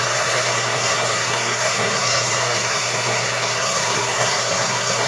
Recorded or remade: remade